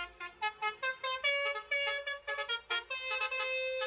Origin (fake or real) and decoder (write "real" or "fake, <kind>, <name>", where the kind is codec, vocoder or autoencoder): real